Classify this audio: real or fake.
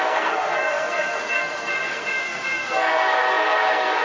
fake